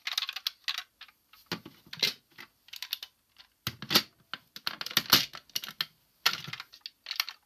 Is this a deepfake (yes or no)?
no